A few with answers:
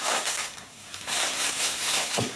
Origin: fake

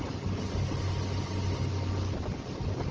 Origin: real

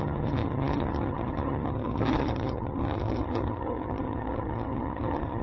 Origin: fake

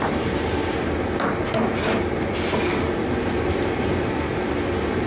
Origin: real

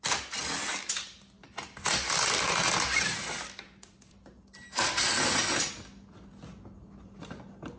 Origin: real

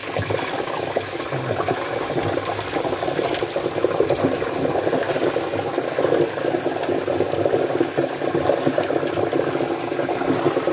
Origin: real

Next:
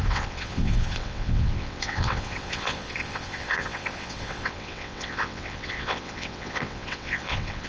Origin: fake